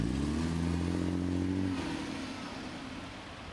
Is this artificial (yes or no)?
no